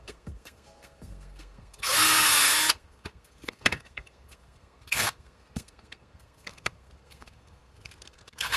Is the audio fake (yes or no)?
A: yes